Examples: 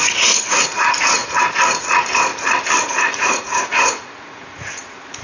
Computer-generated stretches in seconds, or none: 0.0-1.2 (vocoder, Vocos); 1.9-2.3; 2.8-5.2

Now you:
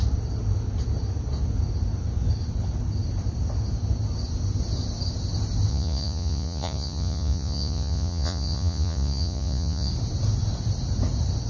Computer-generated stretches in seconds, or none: 5.7-9.9 (vocoder, Vocos)

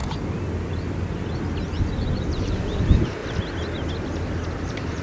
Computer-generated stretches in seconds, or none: 1.7-3.2 (vocoder, BigVGAN v2); 4.6-5.0

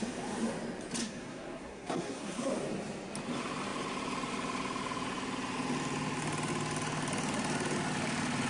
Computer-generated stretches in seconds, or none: 1.0-2.5 (codec, SNAC)

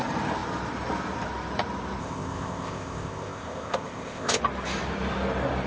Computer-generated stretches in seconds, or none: 2.0-4.4 (codec, ZipCodec)

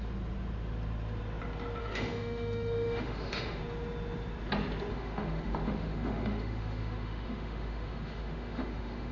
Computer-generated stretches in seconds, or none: 1.8-3.6 (autoencoder, DAC-VAE); 4.9-9.1

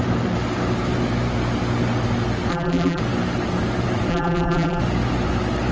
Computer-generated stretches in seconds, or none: 2.5-3.0 (vocoder, BigVGAN v2); 4.1-4.8